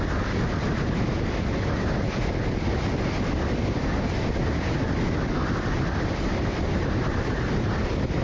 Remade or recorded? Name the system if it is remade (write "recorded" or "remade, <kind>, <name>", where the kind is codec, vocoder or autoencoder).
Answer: recorded